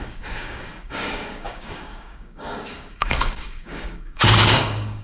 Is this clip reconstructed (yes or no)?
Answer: yes